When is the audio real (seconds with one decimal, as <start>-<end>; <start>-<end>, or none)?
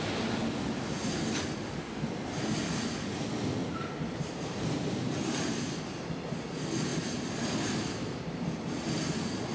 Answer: 0.0-3.6; 5.6-9.5